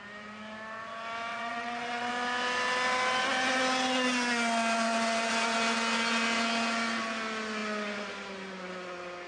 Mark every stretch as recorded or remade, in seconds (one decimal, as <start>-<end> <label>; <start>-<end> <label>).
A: 0.0-1.3 recorded; 1.3-2.1 remade; 2.1-9.3 recorded